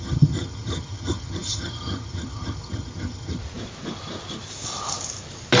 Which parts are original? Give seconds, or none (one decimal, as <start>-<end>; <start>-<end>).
3.4-5.6